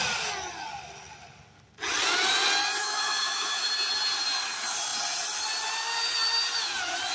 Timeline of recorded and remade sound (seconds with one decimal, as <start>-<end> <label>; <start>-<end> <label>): 0.0-2.8 recorded; 2.8-3.7 remade; 3.7-7.1 recorded